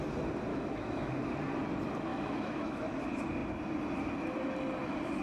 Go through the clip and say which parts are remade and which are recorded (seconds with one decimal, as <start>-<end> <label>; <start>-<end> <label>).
0.0-0.5 recorded; 0.5-1.1 remade; 1.1-2.1 recorded; 2.1-3.0 remade; 3.0-5.2 recorded